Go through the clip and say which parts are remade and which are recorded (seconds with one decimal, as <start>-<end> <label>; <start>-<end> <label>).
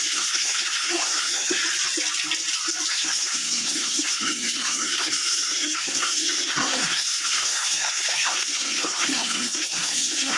0.0-1.6 remade; 1.6-2.9 recorded; 2.9-10.4 remade